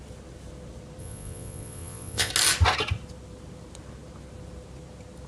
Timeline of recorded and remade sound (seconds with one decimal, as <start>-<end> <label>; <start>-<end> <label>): 0.0-1.0 recorded; 1.0-2.3 remade; 2.3-5.3 recorded